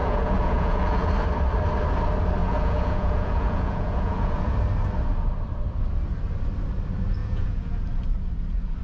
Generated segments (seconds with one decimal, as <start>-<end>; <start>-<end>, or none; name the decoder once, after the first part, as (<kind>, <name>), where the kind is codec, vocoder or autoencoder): 0.0-1.1 (vocoder, Vocos); 2.4-4.5; 7.2-7.8